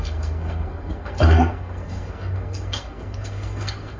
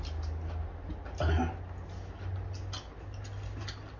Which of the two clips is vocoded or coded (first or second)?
first